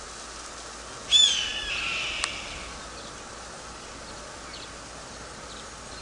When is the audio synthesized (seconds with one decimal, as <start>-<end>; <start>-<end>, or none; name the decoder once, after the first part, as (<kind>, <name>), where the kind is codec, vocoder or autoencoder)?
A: none